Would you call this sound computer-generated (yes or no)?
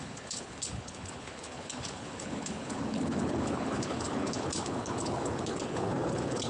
yes